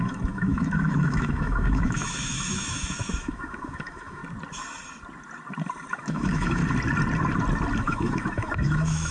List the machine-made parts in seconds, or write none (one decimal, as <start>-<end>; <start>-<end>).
0.0-4.2; 5.9-6.6; 7.8-9.1